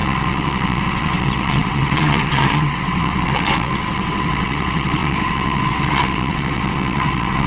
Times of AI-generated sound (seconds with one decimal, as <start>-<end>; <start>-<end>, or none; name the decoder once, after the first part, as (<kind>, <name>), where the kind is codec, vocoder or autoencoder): 0.0-7.5 (vocoder, WaveNeXt)